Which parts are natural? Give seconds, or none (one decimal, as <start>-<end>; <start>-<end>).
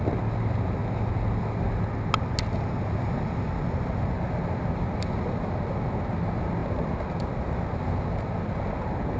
0.0-9.2